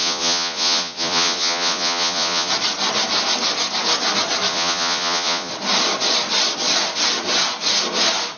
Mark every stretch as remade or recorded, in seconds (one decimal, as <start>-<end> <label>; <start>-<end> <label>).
0.0-2.5 remade; 2.5-4.5 recorded; 4.5-5.5 remade; 5.5-8.4 recorded